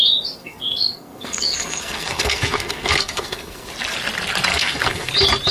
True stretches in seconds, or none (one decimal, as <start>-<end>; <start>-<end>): 0.0-0.4; 3.7-4.5; 5.1-5.5